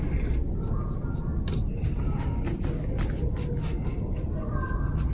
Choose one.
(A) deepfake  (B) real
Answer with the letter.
B